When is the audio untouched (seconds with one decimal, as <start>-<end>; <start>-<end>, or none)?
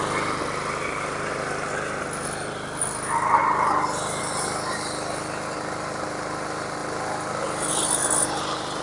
0.0-8.8